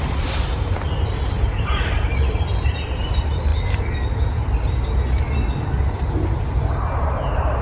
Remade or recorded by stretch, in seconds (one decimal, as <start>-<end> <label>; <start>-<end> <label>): 0.0-3.5 remade; 3.5-6.7 recorded; 6.7-7.6 remade